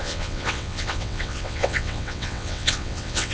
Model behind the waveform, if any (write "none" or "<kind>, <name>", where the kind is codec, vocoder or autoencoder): vocoder, WaveNeXt